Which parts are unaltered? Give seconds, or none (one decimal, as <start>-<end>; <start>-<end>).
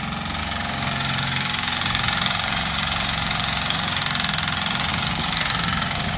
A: 0.0-0.4; 4.0-4.9